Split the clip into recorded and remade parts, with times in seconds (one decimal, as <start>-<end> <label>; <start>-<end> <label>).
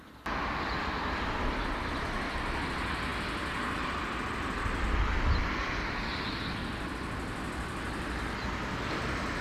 0.0-9.4 recorded